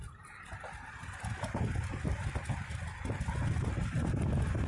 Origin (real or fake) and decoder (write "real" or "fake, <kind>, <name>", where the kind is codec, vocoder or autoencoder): real